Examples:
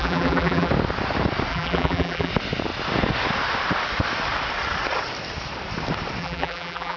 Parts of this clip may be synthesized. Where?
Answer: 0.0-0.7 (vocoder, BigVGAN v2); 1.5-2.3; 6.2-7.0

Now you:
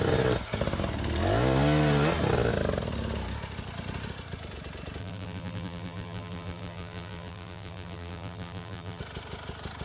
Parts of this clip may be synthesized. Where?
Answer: 5.0-9.0 (vocoder, BigVGAN v2)

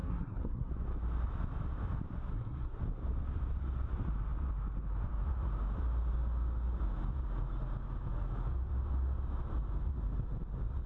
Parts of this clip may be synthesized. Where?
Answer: 0.0-0.7 (codec, SNAC); 2.3-2.8

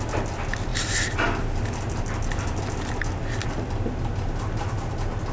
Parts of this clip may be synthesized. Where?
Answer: none

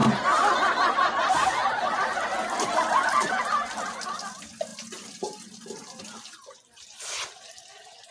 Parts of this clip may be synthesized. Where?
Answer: none